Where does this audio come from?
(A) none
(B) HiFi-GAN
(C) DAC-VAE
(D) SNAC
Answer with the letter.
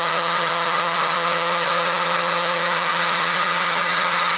B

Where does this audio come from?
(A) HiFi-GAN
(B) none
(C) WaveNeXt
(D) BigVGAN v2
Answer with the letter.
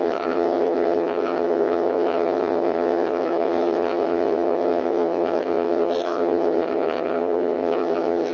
A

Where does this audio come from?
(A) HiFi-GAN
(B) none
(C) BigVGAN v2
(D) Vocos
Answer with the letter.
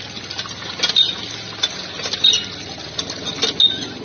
B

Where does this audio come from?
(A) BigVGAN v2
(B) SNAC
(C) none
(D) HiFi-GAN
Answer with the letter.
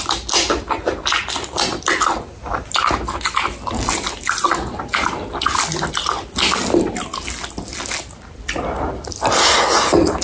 C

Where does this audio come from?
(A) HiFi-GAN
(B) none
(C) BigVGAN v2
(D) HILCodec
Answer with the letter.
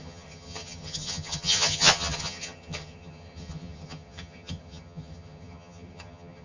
A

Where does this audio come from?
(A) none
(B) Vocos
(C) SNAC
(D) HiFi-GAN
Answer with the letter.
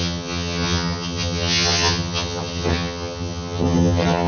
D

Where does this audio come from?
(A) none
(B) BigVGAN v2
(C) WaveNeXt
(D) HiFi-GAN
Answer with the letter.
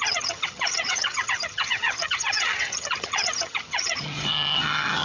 D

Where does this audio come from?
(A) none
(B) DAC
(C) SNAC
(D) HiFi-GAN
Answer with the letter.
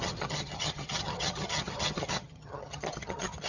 D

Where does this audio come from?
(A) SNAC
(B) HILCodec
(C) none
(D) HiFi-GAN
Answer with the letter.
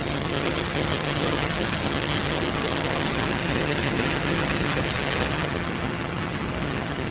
D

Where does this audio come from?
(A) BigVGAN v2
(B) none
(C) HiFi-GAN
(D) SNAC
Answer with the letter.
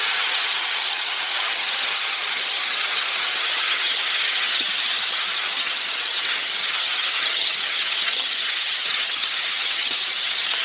C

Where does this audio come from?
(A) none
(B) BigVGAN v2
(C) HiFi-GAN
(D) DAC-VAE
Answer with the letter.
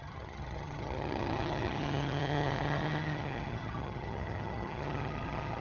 C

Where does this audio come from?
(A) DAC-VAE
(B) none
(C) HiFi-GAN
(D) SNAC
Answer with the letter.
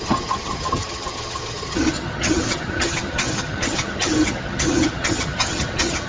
C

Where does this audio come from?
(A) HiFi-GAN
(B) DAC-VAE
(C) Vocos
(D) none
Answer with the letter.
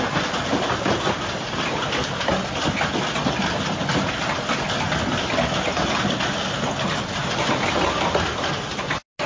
D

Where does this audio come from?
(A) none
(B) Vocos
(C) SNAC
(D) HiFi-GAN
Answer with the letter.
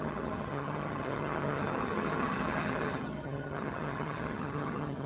D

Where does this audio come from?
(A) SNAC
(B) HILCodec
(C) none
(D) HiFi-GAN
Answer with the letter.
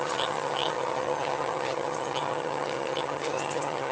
D